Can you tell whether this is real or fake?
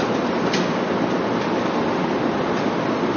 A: real